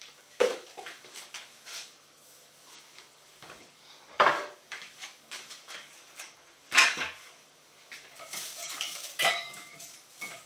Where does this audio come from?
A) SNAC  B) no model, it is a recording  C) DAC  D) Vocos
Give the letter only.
C